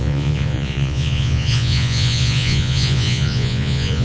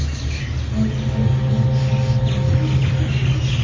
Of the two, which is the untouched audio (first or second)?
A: second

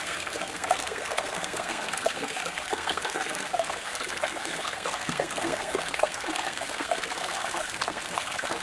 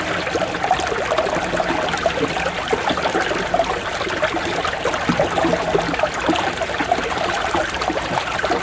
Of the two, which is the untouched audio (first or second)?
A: second